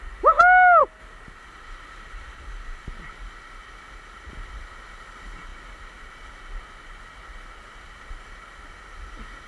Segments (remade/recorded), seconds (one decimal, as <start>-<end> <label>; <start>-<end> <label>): 0.0-9.5 recorded